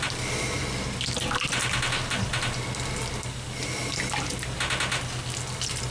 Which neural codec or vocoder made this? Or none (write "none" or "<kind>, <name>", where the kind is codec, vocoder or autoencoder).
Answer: none